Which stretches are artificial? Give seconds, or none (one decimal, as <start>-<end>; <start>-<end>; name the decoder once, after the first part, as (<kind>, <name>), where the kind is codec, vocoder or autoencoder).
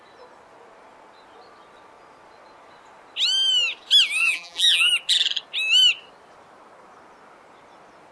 4.2-4.9 (vocoder, BigVGAN v2)